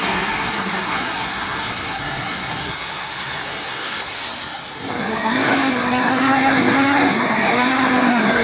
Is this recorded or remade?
remade